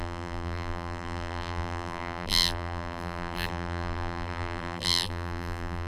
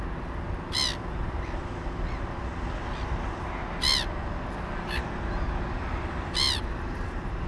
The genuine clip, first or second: second